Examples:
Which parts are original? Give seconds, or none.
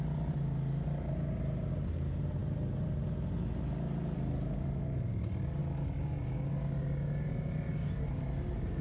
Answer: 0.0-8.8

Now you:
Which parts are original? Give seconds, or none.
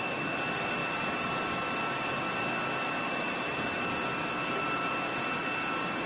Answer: 0.0-6.1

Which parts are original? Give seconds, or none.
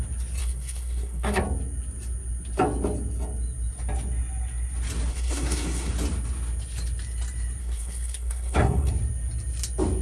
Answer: 0.0-0.4; 1.4-5.1; 5.9-7.6; 8.9-10.0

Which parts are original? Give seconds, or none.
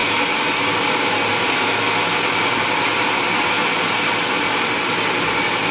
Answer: 0.0-5.7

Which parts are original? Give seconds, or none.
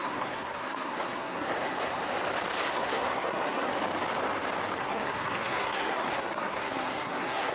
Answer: 2.0-2.7; 3.7-4.8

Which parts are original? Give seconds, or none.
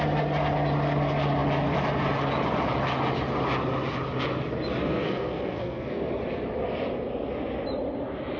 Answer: 0.0-4.8; 6.1-8.4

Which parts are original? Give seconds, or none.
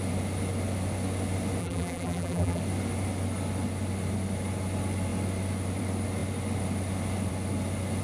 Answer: 0.0-1.6; 2.6-8.0